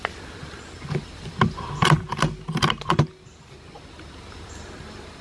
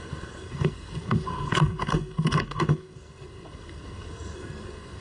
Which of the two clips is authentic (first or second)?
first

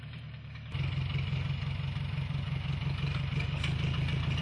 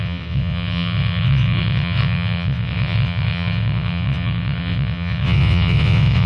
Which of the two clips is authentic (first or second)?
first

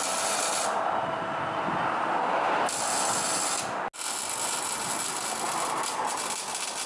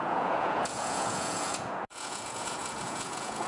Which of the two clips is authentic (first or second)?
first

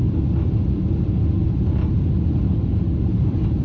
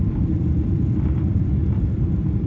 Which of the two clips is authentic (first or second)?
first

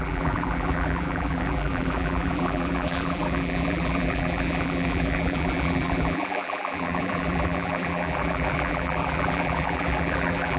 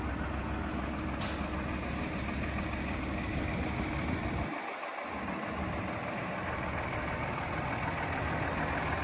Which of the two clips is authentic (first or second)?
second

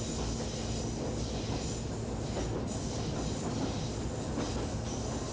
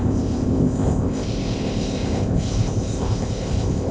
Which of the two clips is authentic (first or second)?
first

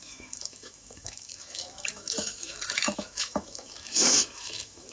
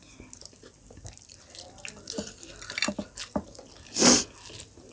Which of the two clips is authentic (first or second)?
second